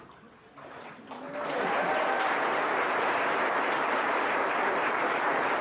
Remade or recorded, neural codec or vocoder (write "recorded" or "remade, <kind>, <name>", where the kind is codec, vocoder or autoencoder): recorded